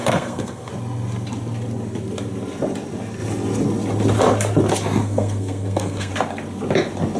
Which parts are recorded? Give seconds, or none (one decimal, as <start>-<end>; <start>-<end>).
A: 0.7-5.0; 6.1-7.2